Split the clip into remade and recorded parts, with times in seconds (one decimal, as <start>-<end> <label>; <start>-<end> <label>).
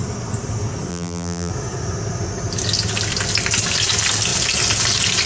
0.0-0.9 recorded; 0.9-1.5 remade; 1.5-5.3 recorded